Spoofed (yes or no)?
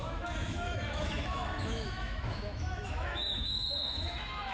yes